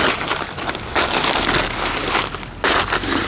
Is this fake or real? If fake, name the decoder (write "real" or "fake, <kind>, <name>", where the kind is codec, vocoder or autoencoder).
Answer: real